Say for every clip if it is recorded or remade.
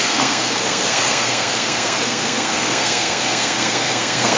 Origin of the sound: remade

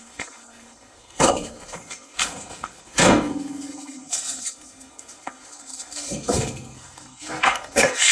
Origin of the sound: remade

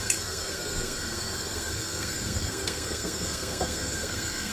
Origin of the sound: remade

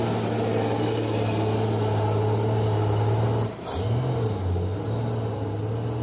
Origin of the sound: recorded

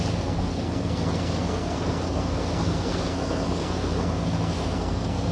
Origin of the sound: remade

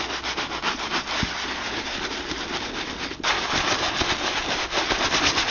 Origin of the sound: recorded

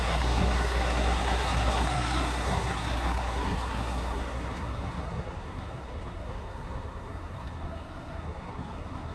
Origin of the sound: remade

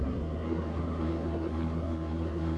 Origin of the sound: remade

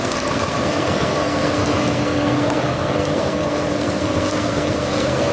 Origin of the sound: remade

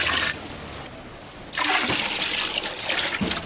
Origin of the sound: recorded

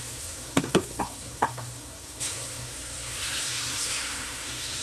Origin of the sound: remade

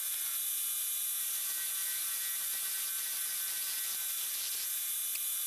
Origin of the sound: recorded